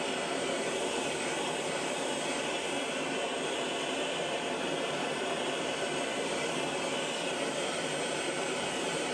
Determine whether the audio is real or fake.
fake